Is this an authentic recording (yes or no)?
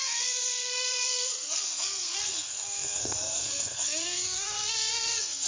no